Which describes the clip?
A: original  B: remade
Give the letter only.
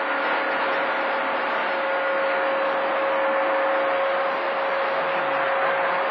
A